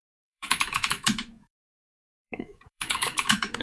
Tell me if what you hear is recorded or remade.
remade